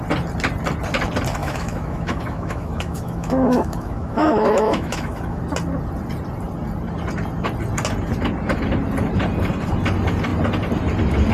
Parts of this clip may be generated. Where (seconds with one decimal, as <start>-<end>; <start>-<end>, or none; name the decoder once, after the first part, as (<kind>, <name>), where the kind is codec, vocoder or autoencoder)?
1.4-5.4 (autoencoder, DAC-VAE)

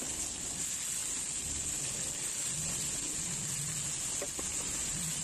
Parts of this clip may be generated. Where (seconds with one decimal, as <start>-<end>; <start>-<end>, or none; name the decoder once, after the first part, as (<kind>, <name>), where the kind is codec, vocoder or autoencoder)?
4.5-5.2 (vocoder, BigVGAN v2)

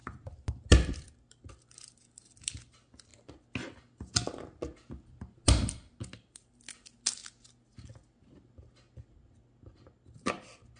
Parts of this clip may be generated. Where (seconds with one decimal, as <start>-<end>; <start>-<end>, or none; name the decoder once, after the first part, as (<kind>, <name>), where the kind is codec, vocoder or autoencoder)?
none

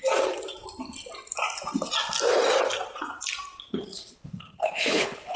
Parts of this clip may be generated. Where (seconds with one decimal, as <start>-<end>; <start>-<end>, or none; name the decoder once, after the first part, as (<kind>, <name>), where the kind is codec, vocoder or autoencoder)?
3.7-5.4 (codec, HILCodec)

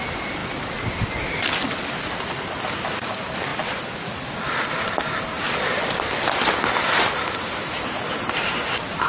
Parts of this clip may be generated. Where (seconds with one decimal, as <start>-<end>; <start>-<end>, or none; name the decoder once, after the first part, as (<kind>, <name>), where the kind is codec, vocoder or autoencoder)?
none

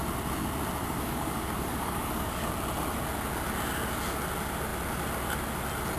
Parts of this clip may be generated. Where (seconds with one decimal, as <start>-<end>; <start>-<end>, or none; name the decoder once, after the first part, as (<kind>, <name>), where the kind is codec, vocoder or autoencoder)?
0.8-2.5 (codec, DAC)

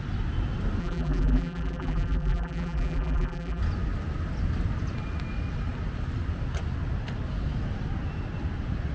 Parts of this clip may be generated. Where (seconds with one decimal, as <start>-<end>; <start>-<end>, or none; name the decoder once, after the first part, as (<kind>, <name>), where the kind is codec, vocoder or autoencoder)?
0.8-3.6 (vocoder, BigVGAN v2)

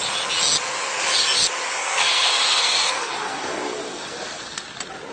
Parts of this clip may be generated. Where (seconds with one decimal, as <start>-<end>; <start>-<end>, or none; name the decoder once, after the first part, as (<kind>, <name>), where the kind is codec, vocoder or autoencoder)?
1.8-4.6 (codec, SNAC)